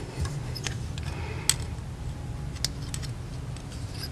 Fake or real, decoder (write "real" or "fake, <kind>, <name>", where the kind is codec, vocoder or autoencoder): real